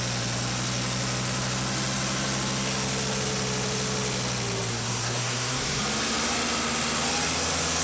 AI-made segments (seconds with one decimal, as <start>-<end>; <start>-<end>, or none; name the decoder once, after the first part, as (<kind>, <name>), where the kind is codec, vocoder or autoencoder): 4.7-5.8 (codec, SNAC)